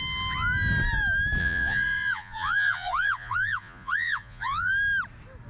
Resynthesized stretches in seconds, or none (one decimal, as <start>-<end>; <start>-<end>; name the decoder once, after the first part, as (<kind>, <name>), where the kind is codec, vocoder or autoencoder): 1.4-4.7 (vocoder, Vocos)